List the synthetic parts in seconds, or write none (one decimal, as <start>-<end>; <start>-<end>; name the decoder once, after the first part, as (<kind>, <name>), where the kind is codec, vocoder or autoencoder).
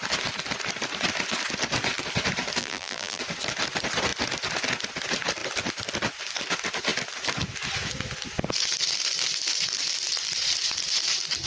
2.6-3.2 (vocoder, BigVGAN v2)